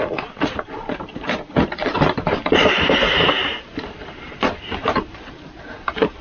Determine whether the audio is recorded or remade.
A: remade